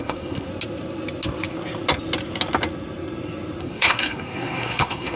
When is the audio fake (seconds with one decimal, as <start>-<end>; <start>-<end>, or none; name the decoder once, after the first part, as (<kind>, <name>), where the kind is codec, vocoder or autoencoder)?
0.0-0.5 (codec, SNAC); 3.6-5.2